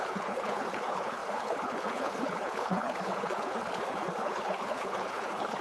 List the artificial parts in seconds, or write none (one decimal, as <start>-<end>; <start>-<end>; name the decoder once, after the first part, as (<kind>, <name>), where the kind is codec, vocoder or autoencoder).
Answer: 0.0-5.6 (codec, HILCodec)